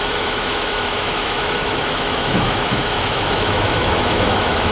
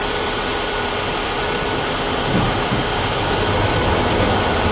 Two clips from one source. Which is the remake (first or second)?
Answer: first